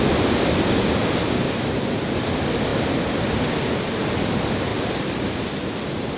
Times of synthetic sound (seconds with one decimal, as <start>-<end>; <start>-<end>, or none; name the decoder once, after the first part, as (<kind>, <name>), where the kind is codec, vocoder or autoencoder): none